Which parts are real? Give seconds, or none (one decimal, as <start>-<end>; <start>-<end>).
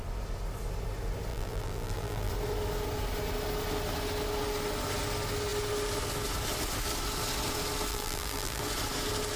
0.0-1.3; 2.3-7.9; 8.6-9.4